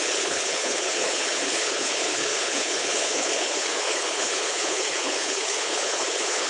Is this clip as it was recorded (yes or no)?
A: no